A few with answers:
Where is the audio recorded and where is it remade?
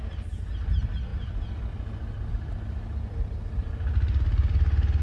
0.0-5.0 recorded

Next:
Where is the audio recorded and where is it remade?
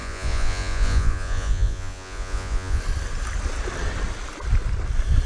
0.0-2.8 remade; 2.8-5.3 recorded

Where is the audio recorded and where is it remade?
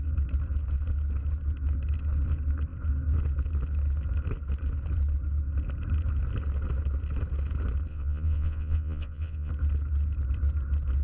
0.0-7.9 recorded; 7.9-9.5 remade; 9.5-11.0 recorded